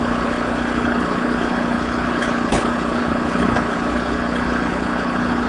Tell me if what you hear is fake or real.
fake